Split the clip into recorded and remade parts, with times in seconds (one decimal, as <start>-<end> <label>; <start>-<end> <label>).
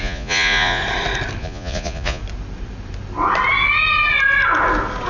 0.0-0.8 remade; 0.8-1.4 recorded; 1.4-2.2 remade; 2.2-5.1 recorded